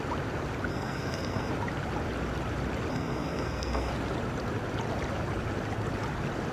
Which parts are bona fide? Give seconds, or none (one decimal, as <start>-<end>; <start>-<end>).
0.0-0.7; 1.5-2.9; 3.9-6.5